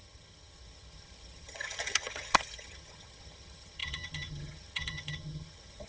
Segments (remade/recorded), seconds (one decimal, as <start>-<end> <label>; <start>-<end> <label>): 0.0-5.9 remade